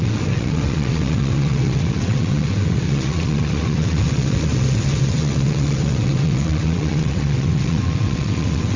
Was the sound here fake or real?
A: fake